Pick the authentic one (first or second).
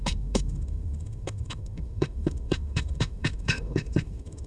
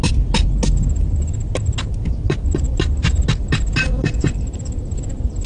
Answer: second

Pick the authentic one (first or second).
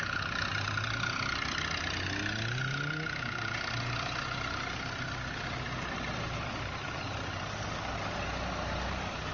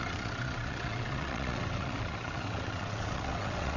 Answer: first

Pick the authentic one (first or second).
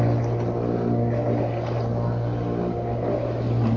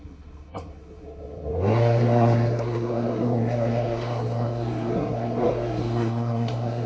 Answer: first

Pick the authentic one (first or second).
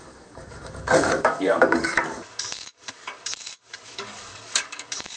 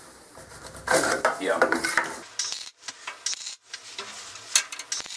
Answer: second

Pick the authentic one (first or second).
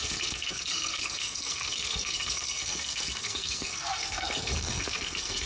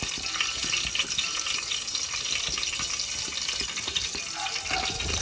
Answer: second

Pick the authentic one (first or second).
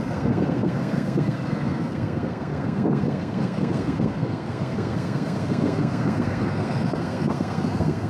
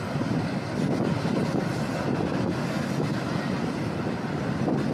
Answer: second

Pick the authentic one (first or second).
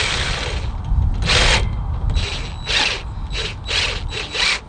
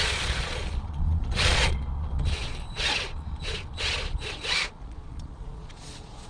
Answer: first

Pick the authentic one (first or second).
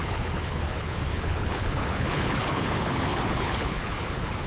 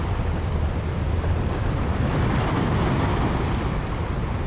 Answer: second